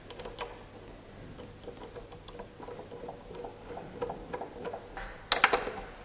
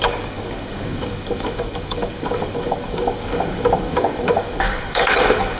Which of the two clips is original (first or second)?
first